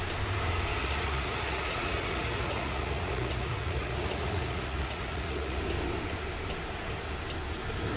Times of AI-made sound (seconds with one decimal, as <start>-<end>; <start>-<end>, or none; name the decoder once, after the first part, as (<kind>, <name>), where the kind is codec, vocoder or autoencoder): 0.8-5.6 (vocoder, Vocos)

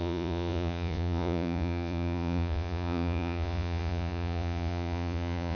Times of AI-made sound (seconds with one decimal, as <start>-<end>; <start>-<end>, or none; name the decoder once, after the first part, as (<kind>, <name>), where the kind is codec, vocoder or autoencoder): 0.0-5.5 (vocoder, Vocos)

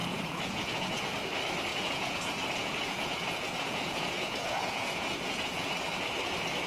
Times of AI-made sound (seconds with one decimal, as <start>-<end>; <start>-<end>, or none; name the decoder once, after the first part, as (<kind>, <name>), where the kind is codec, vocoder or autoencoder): 0.0-1.1 (vocoder, Vocos); 1.7-5.7

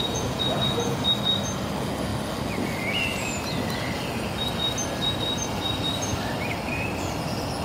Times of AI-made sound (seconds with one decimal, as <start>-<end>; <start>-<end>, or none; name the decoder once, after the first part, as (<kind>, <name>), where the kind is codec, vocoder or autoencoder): 0.0-1.1 (vocoder, Vocos)